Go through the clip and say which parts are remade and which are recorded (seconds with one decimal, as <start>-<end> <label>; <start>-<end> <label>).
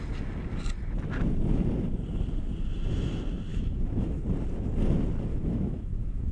0.0-3.5 recorded; 3.5-4.2 remade; 4.2-5.3 recorded; 5.3-6.3 remade